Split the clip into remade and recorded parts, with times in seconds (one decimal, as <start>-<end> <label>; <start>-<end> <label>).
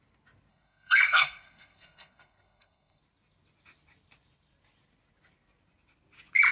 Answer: 0.0-0.5 recorded; 0.5-3.0 remade; 3.0-6.5 recorded